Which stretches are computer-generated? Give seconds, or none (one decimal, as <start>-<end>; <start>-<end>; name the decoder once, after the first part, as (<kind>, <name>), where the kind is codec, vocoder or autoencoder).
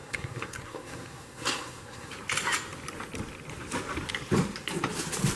0.0-2.1 (codec, SNAC)